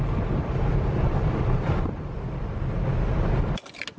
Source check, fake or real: real